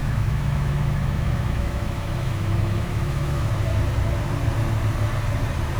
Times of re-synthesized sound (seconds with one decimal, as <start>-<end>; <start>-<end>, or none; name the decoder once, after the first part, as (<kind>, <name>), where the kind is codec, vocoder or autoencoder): 0.0-3.5 (autoencoder, DAC-VAE)